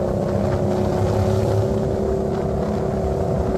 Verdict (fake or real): real